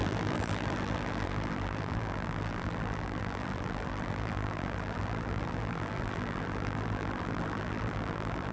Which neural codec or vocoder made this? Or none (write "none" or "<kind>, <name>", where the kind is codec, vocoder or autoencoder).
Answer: vocoder, BigVGAN v2